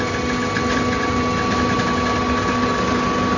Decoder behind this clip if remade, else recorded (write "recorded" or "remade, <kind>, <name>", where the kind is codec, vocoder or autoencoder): recorded